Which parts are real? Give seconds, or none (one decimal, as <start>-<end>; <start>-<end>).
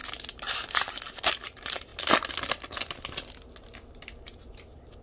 0.0-1.3; 1.9-5.0